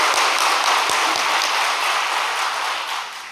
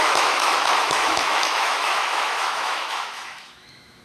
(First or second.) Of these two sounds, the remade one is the second